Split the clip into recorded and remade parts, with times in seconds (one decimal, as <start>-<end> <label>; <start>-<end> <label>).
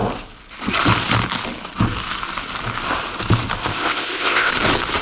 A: 0.0-3.6 recorded; 3.6-4.5 remade; 4.5-5.0 recorded